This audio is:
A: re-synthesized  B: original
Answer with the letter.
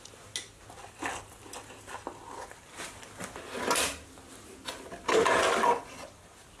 B